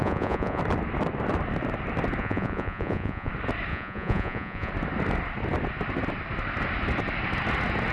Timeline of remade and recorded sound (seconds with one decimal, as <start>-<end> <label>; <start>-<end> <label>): 0.0-0.6 remade; 0.6-2.2 recorded; 2.2-3.3 remade; 3.3-3.7 recorded; 3.7-4.7 remade; 4.7-7.9 recorded